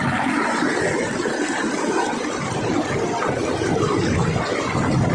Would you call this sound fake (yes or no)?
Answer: no